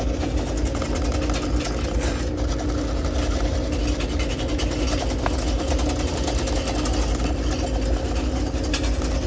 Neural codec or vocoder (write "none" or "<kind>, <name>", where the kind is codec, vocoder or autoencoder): none